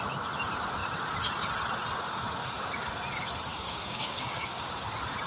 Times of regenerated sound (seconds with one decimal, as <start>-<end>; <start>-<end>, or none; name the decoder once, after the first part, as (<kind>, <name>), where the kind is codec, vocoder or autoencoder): 2.4-2.9 (codec, DAC); 3.5-4.7